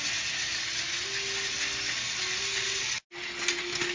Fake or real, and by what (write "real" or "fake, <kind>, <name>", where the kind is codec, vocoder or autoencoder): real